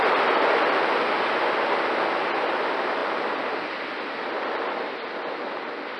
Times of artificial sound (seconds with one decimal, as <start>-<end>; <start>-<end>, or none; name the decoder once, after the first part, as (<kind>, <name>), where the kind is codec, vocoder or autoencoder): none